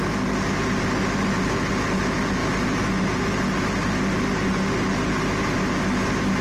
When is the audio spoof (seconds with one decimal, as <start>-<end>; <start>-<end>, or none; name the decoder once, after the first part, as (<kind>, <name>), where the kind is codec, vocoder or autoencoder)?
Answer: none